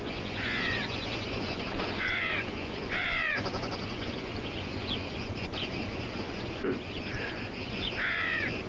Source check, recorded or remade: remade